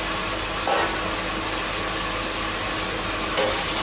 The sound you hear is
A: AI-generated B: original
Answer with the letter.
B